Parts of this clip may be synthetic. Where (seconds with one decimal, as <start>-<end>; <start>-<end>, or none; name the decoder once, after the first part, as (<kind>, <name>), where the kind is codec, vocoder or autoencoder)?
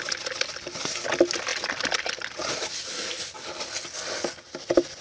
none